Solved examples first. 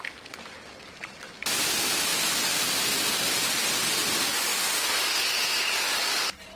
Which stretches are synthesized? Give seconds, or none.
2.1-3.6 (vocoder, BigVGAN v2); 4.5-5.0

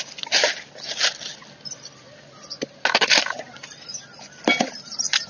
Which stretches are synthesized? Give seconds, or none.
none

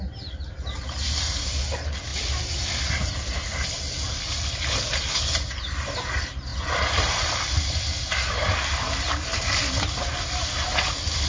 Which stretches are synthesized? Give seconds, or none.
none

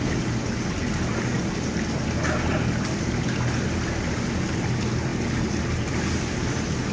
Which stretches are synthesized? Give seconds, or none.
none